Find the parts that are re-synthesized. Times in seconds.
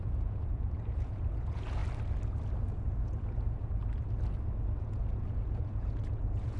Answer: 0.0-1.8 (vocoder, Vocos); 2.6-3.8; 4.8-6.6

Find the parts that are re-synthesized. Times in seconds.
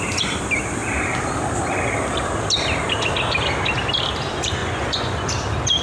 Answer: 4.6-5.3 (vocoder, Vocos)